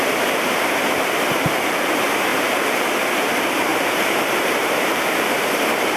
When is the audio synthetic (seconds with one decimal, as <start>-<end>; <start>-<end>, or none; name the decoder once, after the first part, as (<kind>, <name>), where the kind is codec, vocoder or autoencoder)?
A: 2.3-2.9 (vocoder, BigVGAN v2); 3.7-5.4